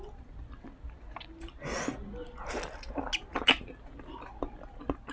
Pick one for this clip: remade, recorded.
recorded